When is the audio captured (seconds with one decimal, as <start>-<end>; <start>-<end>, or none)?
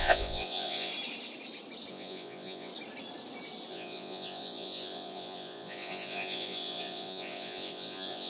0.9-1.9; 2.7-3.7